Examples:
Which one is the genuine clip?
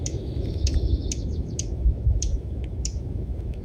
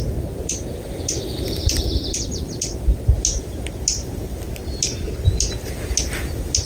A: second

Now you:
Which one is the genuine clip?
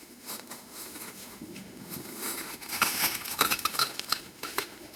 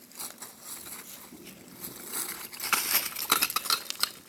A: second